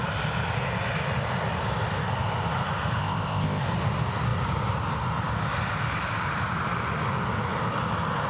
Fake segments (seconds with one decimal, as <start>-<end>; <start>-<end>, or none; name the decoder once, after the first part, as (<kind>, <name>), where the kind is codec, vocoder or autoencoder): 3.0-3.6 (codec, ZipCodec)